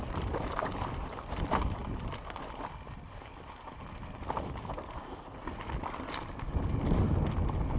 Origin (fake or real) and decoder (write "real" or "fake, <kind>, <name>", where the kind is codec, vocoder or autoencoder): real